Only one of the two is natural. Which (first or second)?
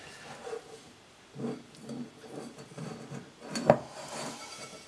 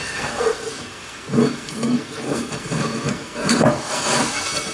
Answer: first